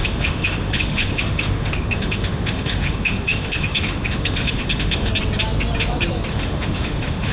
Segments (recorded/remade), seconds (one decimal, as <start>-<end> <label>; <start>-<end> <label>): 0.0-5.1 remade; 5.1-6.3 recorded; 6.3-7.3 remade